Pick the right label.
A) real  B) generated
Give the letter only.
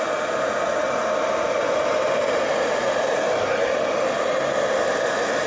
A